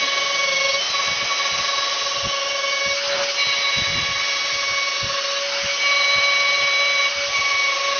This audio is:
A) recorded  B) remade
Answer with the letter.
A